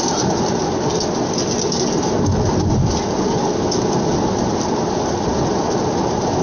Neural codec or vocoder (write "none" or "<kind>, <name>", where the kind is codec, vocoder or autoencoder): none